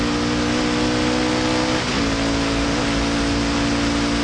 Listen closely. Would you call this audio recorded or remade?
recorded